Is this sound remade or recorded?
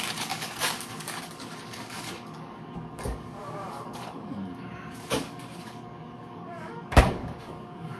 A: remade